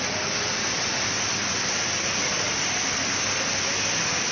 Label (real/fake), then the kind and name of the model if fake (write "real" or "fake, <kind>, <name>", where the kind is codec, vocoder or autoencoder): real